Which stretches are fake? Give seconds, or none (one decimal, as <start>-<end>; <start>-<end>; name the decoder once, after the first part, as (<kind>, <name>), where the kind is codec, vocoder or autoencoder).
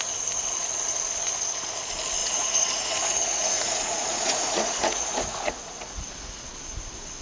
2.2-6.5 (vocoder, Vocos)